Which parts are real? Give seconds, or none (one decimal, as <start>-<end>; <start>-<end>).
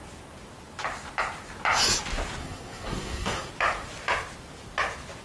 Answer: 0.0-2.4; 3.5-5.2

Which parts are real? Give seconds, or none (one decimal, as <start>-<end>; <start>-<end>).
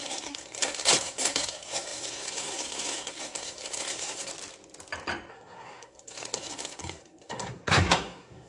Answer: 4.3-5.3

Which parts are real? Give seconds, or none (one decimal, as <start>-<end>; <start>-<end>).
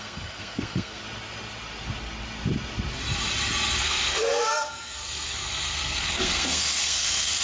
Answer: 1.0-3.8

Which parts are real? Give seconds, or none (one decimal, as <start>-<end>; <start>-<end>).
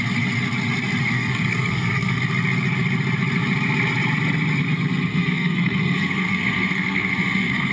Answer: 0.0-1.0; 2.2-5.1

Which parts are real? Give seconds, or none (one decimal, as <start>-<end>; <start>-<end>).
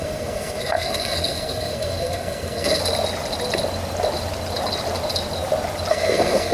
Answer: 2.8-5.9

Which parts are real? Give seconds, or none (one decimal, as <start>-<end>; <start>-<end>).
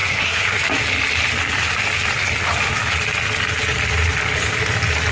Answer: 0.6-5.1